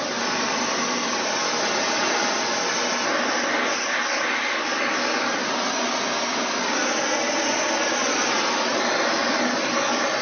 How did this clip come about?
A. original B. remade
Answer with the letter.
A